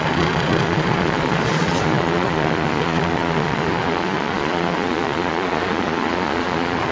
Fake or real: fake